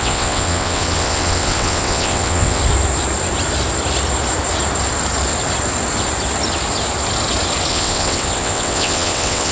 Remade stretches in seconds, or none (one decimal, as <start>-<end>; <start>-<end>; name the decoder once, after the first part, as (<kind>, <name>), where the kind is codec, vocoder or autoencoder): 0.0-2.6 (vocoder, WaveNeXt); 7.7-9.5